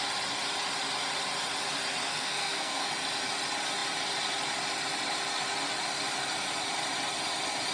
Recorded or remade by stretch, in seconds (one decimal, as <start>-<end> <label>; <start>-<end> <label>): 0.0-2.1 recorded; 2.1-2.9 remade; 2.9-7.7 recorded